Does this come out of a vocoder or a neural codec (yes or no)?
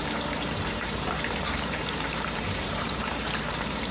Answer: yes